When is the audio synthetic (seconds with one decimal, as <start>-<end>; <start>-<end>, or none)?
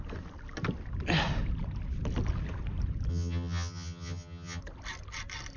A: 3.1-4.6